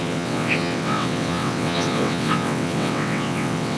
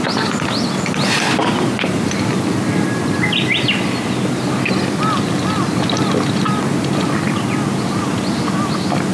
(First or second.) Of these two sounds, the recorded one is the second